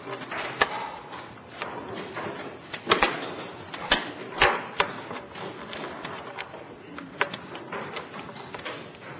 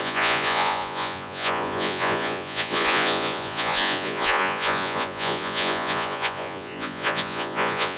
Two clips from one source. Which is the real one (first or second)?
first